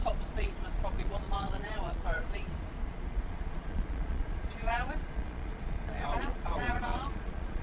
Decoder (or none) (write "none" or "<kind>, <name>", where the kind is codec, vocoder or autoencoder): vocoder, Vocos